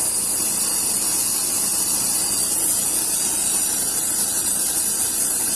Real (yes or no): yes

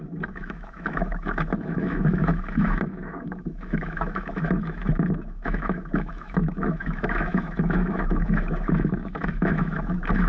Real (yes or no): no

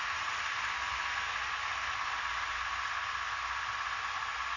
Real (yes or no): yes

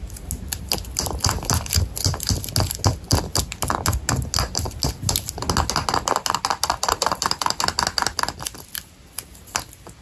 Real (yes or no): yes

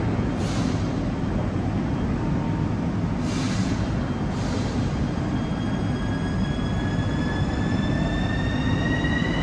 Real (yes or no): yes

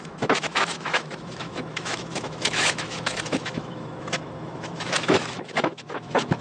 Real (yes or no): no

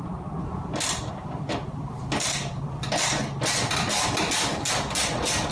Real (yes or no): yes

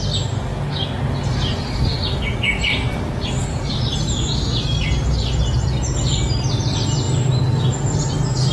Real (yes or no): yes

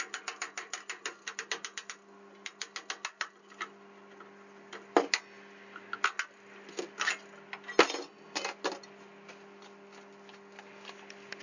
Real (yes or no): yes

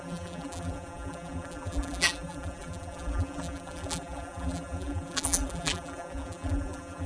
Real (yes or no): no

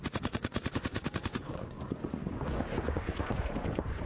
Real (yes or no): no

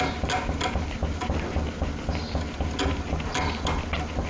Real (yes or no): yes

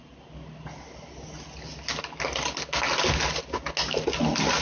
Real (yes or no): yes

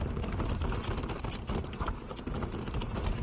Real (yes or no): yes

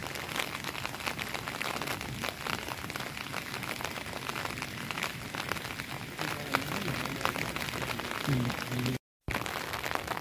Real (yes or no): yes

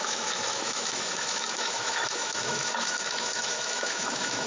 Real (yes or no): no